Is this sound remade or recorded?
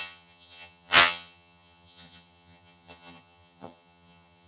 remade